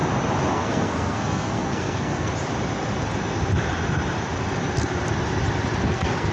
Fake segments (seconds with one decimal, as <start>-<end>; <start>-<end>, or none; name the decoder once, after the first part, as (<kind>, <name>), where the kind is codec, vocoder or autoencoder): 0.5-2.3 (codec, SNAC); 5.8-6.3